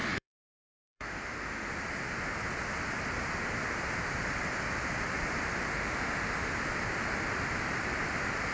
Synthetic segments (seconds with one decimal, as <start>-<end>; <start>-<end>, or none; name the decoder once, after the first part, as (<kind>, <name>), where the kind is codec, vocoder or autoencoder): 0.0-1.7 (autoencoder, DAC-VAE); 5.7-6.5